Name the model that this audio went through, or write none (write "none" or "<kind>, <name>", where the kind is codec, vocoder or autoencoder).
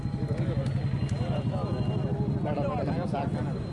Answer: none